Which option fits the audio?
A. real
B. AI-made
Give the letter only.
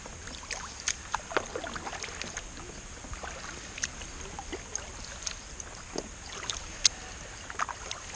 A